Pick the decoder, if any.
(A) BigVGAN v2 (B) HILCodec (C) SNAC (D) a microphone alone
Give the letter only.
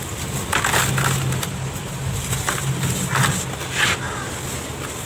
D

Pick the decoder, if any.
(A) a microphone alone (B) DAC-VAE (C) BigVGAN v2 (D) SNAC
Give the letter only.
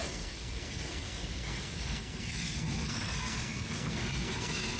D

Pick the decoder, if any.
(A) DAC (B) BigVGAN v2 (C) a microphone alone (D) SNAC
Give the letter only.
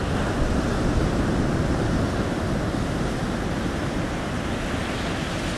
C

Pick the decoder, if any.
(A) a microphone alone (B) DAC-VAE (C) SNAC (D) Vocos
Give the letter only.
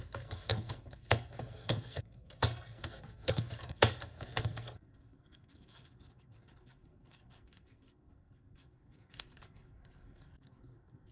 C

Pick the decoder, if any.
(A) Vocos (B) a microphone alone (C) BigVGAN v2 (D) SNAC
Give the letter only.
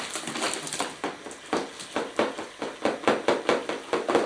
B